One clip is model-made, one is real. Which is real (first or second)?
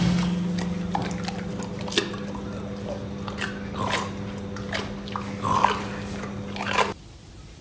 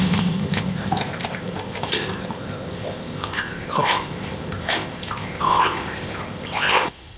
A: first